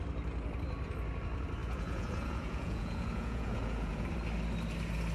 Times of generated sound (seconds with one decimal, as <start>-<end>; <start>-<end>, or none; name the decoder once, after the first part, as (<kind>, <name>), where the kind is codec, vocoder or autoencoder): 1.6-4.1 (vocoder, Vocos)